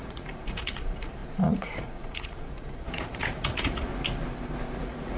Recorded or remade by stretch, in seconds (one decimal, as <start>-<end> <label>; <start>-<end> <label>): 0.0-3.9 remade; 3.9-4.8 recorded; 4.8-5.2 remade